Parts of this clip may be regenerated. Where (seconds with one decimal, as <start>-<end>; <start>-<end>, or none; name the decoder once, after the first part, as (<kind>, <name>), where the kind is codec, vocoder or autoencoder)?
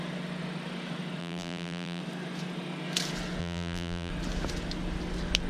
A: 1.2-2.0 (vocoder, BigVGAN v2); 3.4-4.1